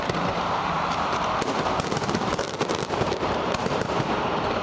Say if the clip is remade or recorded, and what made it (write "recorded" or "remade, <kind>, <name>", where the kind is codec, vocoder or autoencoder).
remade, vocoder, BigVGAN v2